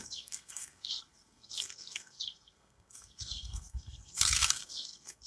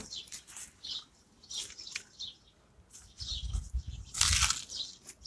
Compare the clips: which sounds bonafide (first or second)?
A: second